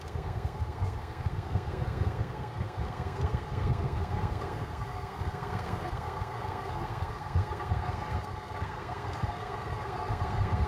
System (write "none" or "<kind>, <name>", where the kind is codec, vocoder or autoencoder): codec, SNAC